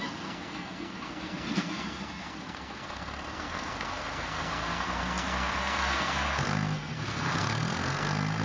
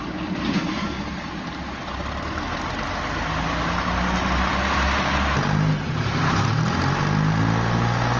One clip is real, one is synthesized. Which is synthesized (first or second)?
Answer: first